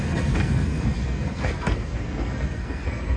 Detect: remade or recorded remade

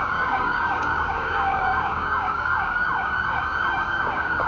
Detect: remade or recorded remade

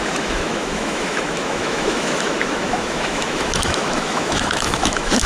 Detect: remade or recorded remade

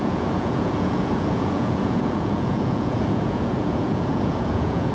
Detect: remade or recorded remade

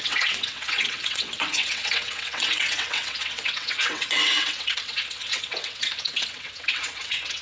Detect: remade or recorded remade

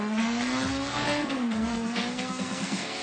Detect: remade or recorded remade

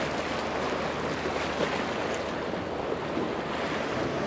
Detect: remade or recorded recorded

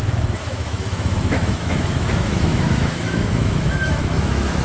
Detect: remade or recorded remade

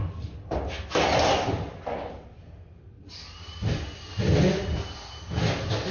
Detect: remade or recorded recorded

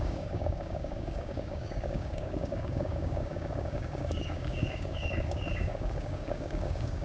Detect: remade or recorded remade